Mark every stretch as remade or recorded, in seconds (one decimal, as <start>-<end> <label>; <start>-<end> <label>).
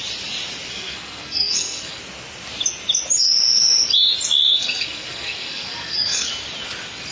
0.0-0.7 recorded; 0.7-2.0 remade; 2.0-4.5 recorded; 4.5-6.3 remade; 6.3-7.1 recorded